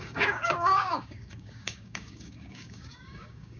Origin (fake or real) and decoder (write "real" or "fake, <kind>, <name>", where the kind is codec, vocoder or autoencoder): fake, codec, DAC